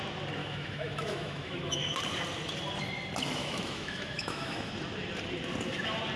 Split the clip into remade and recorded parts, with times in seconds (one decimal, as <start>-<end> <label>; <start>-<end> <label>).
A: 0.0-0.4 recorded; 0.4-1.8 remade; 1.8-3.4 recorded; 3.4-4.7 remade; 4.7-6.2 recorded